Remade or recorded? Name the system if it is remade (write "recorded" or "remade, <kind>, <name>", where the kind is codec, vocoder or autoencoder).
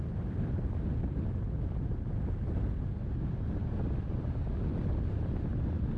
recorded